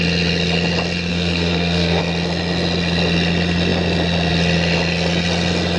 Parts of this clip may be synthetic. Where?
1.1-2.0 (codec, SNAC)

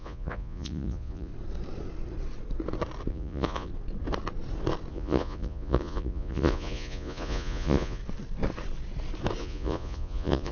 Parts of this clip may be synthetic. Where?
0.0-1.3 (vocoder, Vocos); 3.1-3.7; 4.9-8.0; 9.4-10.5

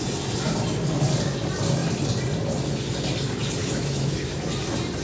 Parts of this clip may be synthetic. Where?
3.6-4.3 (autoencoder, DAC-VAE)

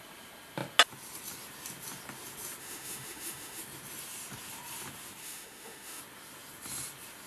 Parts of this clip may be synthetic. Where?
2.6-3.6 (autoencoder, DAC-VAE); 5.2-6.0

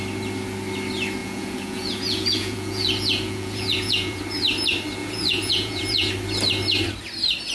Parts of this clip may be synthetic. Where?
1.2-4.2 (vocoder, Vocos); 5.0-6.1